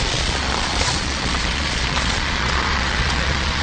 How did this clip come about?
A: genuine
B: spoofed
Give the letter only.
B